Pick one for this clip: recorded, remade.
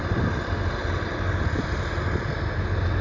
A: recorded